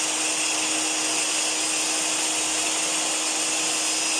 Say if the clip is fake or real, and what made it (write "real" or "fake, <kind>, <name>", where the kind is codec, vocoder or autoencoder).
real